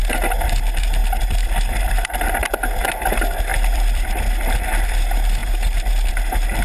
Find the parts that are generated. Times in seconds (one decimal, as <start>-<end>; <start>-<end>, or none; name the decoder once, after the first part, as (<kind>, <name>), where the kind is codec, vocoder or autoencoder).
1.0-2.4 (vocoder, BigVGAN v2); 3.5-4.1